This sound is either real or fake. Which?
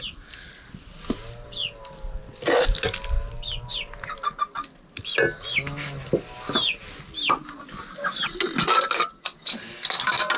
real